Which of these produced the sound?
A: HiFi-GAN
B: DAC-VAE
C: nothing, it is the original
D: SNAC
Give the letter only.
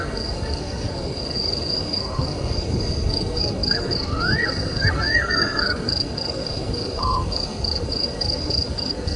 D